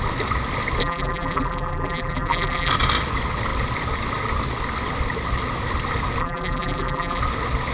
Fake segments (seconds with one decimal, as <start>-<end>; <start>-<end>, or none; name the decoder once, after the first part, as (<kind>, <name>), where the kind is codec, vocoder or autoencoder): 0.8-2.7 (vocoder, BigVGAN v2); 6.2-7.2